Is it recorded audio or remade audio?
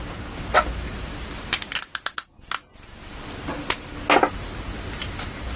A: recorded